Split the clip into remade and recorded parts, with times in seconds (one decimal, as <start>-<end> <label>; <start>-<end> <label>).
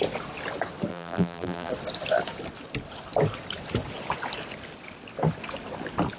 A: 0.0-0.9 recorded; 0.9-1.7 remade; 1.7-6.2 recorded